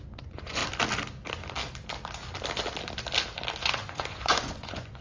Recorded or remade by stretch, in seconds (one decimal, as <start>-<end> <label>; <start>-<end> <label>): 0.0-0.6 remade; 0.6-3.6 recorded; 3.6-5.0 remade